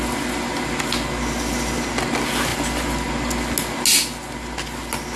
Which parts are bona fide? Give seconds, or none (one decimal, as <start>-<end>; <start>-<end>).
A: 0.0-5.2